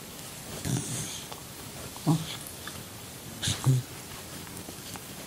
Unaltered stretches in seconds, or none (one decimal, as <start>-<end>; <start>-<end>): 3.4-4.1